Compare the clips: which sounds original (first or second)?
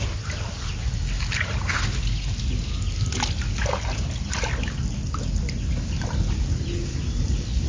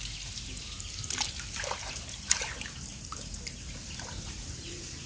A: first